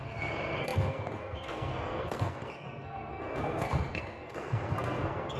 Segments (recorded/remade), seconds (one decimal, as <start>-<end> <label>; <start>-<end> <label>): 0.0-5.4 remade